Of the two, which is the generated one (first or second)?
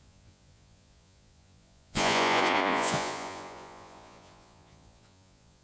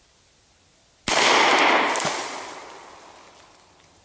first